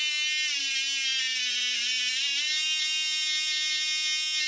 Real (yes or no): yes